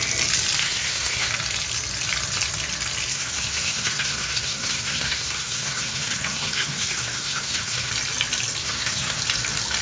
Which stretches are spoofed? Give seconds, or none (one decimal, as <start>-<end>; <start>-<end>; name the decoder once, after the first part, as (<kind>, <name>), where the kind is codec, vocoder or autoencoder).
0.6-1.3 (codec, SNAC); 3.1-7.9; 8.6-9.2